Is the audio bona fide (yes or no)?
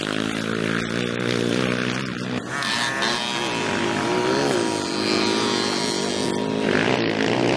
yes